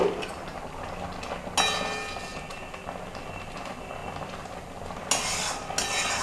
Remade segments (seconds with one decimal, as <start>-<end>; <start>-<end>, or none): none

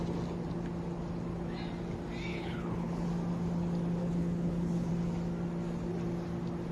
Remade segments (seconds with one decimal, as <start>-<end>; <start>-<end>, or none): 2.3-3.1; 4.0-4.9

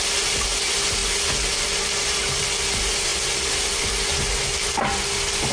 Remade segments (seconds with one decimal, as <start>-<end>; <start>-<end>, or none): none

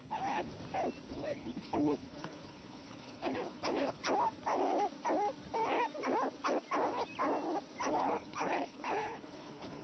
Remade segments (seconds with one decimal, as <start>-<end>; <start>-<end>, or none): 0.0-0.5; 1.1-4.0; 7.9-9.8

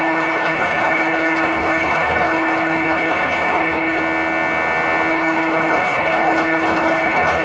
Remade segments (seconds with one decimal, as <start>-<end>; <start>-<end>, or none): 0.0-4.0; 5.1-7.4

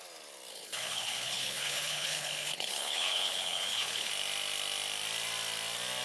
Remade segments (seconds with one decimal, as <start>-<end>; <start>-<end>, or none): 0.5-4.1